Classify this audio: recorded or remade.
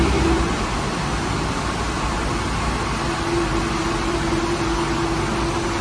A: recorded